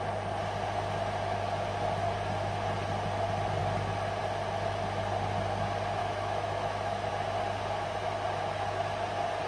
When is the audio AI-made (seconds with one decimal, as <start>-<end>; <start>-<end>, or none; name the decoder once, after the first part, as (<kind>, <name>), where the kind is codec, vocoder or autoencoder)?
6.0-7.1 (autoencoder, DAC-VAE)